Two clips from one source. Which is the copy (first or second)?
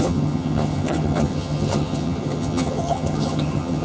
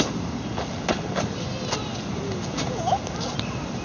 first